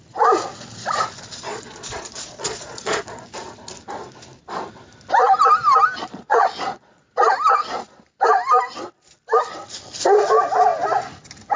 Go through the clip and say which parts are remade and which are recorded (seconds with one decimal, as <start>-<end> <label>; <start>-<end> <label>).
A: 0.0-1.5 recorded; 1.5-3.2 remade; 3.2-6.0 recorded; 6.0-7.1 remade; 7.1-11.6 recorded